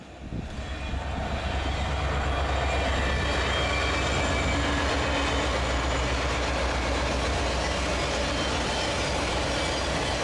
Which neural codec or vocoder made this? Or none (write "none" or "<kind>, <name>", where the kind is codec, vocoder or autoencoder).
none